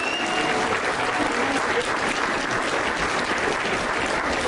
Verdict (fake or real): real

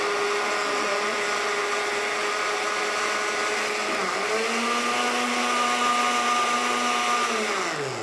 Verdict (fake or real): real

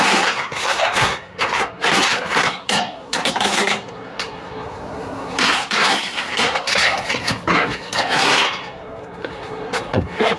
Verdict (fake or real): fake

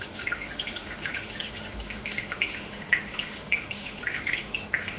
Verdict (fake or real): fake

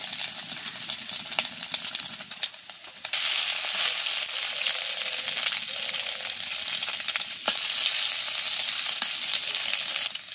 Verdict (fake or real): real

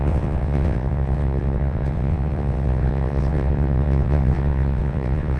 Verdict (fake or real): fake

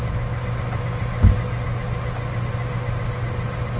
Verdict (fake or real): real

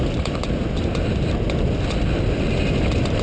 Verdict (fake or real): real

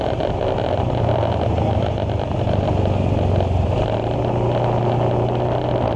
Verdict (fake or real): real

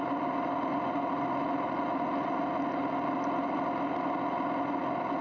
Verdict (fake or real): real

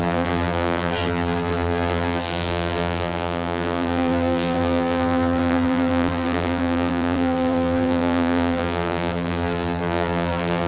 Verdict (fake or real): fake